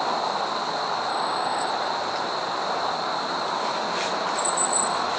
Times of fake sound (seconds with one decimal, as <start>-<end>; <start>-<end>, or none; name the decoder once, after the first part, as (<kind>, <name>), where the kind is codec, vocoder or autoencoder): 1.1-1.7 (codec, DAC)